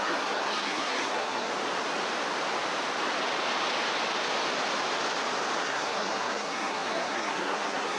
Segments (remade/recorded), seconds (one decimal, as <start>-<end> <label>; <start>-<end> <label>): 0.0-1.5 remade; 1.5-5.6 recorded; 5.6-8.0 remade